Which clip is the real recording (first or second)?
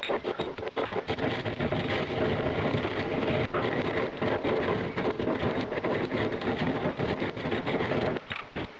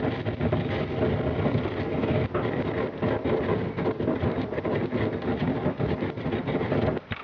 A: second